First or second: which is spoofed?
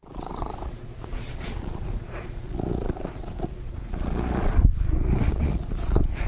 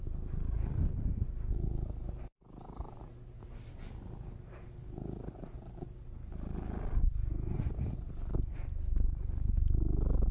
first